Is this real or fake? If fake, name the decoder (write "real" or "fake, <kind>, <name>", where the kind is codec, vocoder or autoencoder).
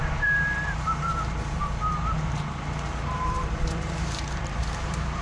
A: fake, vocoder, BigVGAN v2